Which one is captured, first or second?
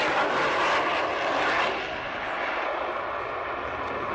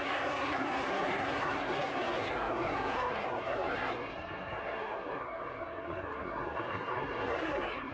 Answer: first